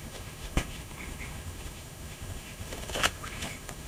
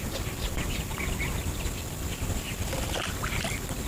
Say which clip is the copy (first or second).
first